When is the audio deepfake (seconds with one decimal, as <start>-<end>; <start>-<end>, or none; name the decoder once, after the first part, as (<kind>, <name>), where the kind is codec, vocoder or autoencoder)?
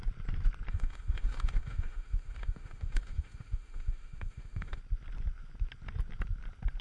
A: 0.7-4.8 (autoencoder, DAC-VAE)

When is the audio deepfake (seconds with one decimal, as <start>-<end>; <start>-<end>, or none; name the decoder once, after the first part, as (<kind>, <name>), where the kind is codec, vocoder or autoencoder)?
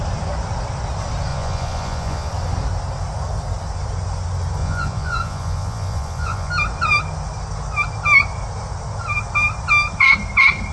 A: 1.3-2.3 (vocoder, Vocos); 4.6-6.5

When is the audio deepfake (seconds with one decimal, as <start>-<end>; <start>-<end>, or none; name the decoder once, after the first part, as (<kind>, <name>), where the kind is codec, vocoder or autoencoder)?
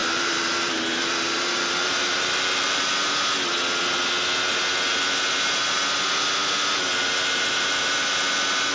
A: 0.0-2.8 (vocoder, BigVGAN v2)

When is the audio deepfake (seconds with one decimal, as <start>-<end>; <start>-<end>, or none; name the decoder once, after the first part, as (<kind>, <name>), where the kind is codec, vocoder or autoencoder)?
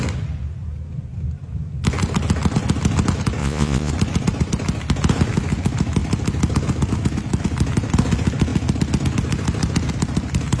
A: 3.4-3.9 (vocoder, Vocos)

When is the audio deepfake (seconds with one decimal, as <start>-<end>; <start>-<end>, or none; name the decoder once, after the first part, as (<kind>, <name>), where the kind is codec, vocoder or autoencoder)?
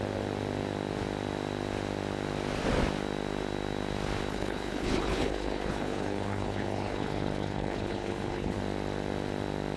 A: 4.3-8.6 (codec, HILCodec)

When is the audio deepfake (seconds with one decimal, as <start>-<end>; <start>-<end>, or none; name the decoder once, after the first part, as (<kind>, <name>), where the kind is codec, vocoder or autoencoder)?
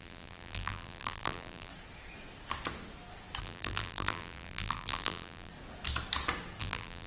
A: 0.0-1.7 (vocoder, BigVGAN v2); 3.4-5.5; 6.6-7.1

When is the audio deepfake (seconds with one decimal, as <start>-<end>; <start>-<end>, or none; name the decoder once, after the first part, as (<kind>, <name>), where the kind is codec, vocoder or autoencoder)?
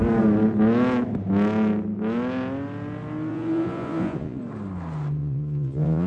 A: 3.3-4.4 (vocoder, Vocos); 5.2-6.1